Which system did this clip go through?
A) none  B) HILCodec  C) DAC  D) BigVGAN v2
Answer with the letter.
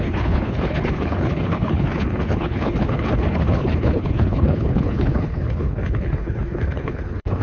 B